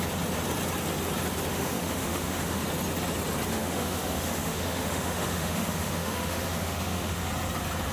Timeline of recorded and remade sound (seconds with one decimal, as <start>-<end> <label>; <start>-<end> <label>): 0.0-1.5 recorded; 1.5-2.6 remade; 2.6-3.5 recorded; 3.5-7.3 remade; 7.3-7.9 recorded